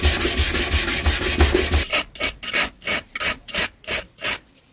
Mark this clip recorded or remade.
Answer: recorded